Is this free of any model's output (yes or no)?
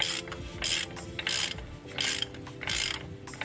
yes